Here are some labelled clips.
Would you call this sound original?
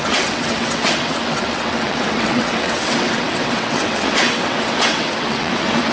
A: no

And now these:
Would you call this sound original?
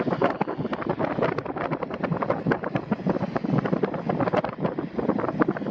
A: yes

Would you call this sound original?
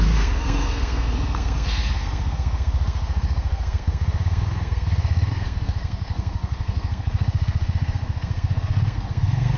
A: no